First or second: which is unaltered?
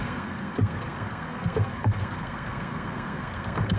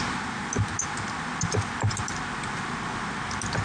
second